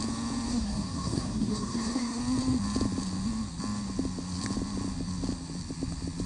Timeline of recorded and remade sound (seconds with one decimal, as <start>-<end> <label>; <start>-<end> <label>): 0.0-0.5 recorded; 0.5-2.2 remade; 2.2-6.3 recorded